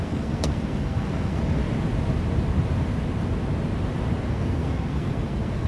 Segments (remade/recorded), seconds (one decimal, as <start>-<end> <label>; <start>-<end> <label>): 0.0-1.6 remade; 1.6-4.3 recorded; 4.3-5.7 remade